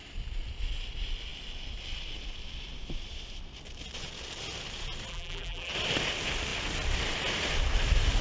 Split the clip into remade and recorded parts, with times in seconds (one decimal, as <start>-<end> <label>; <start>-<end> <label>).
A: 0.0-5.1 recorded; 5.1-5.7 remade; 5.7-8.2 recorded